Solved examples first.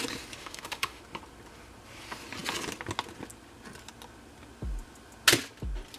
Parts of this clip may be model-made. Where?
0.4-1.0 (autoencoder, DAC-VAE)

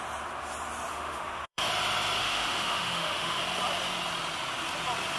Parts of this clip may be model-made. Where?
0.9-1.7 (autoencoder, DAC-VAE); 2.2-3.4

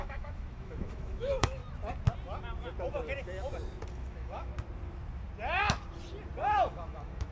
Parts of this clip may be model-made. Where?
0.0-1.6 (autoencoder, DAC-VAE); 3.9-4.5; 6.7-7.3

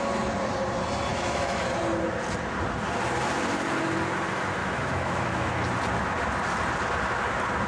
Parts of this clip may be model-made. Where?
1.1-1.6 (autoencoder, DAC-VAE); 4.6-5.5

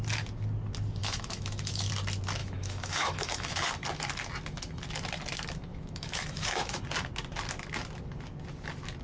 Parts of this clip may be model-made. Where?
1.0-1.9 (autoencoder, DAC-VAE); 2.4-3.7; 5.7-6.8

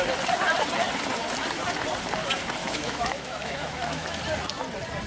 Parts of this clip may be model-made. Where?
2.6-4.2 (autoencoder, DAC-VAE)

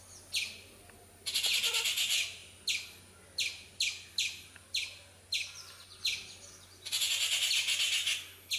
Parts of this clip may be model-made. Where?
none

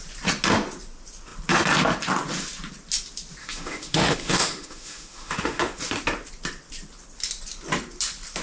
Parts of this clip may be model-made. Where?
3.4-5.8 (autoencoder, DAC-VAE)